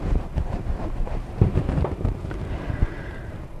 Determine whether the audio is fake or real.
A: fake